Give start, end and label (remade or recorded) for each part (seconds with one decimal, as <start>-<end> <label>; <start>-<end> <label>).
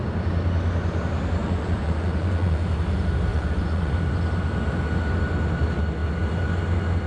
0.0-1.4 recorded; 1.4-2.6 remade; 2.6-3.3 recorded; 3.3-3.9 remade; 3.9-7.1 recorded